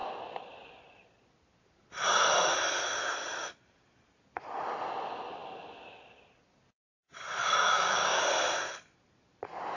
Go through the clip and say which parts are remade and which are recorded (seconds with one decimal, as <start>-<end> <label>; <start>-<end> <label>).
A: 0.0-7.4 recorded; 7.4-8.2 remade; 8.2-9.8 recorded